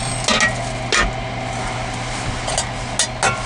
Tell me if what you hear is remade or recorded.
recorded